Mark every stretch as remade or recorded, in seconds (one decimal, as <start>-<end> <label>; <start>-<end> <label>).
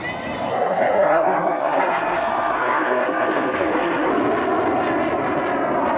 0.0-0.5 recorded; 0.5-4.1 remade; 4.1-6.0 recorded